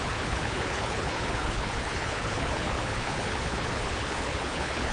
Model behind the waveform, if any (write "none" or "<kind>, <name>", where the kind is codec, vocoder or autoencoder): codec, HILCodec